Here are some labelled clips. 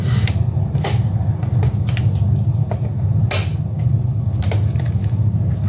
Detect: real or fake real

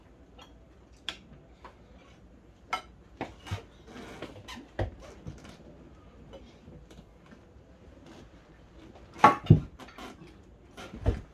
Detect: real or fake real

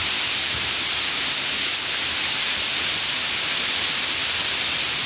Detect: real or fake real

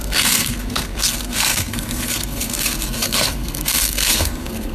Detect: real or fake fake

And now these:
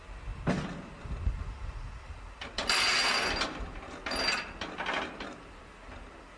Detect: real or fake real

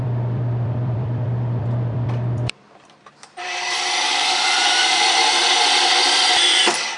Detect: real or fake fake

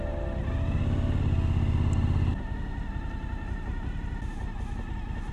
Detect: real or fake real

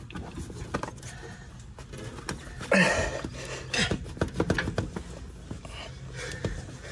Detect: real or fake real